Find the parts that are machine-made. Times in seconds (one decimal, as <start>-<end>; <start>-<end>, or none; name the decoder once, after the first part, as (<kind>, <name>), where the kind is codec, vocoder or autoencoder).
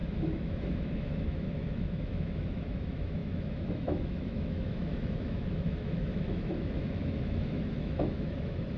0.0-8.8 (autoencoder, DAC-VAE)